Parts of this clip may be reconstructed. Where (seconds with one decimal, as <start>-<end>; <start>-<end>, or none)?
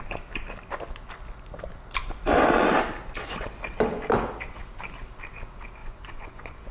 5.8-6.7